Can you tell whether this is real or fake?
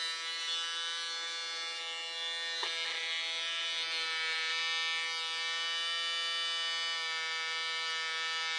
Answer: real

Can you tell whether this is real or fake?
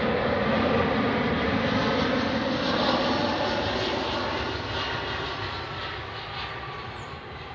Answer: real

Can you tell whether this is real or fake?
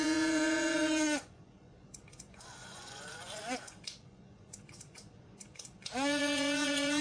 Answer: fake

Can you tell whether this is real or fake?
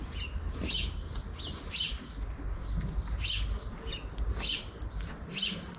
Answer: real